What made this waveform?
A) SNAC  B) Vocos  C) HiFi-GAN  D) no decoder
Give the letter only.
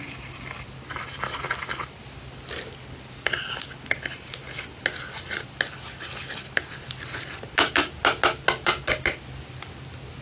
D